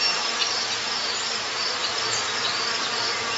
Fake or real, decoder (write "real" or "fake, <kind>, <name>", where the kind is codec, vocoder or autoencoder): real